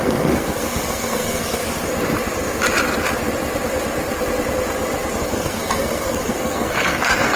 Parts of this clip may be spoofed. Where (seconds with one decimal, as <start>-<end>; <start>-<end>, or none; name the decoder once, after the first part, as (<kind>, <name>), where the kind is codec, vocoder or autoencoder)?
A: 0.0-1.6 (codec, SNAC); 5.2-7.4

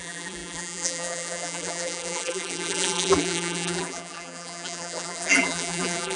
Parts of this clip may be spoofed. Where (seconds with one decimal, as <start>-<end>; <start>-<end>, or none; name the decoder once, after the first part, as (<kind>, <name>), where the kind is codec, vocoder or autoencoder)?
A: 0.0-6.2 (vocoder, BigVGAN v2)

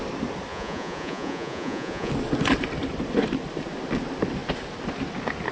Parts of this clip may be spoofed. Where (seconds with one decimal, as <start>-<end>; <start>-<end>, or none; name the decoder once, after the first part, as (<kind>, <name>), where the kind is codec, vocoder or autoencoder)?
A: 0.5-2.1 (vocoder, Vocos)

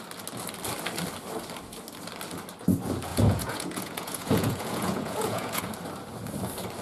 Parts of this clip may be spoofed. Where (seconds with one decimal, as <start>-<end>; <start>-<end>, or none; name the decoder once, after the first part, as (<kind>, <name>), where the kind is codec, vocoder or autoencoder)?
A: 3.1-5.6 (vocoder, Vocos)

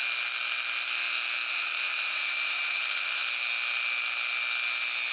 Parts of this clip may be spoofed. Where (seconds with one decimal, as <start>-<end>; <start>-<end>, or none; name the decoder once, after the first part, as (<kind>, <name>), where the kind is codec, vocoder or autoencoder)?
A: 1.5-3.2 (vocoder, BigVGAN v2)

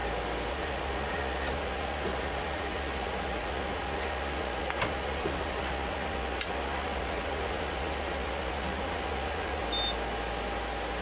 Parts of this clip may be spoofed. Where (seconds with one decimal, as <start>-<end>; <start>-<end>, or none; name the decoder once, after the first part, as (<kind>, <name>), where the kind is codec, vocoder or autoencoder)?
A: 0.5-9.6 (vocoder, Vocos)

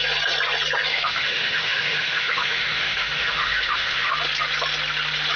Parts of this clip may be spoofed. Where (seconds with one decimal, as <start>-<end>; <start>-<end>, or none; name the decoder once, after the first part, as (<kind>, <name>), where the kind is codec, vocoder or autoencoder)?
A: 0.9-4.1 (autoencoder, DAC-VAE)